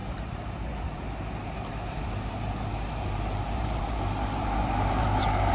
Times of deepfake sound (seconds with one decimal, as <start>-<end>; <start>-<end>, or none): 0.0-1.7; 2.7-5.5